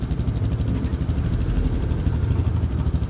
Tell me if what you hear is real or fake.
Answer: real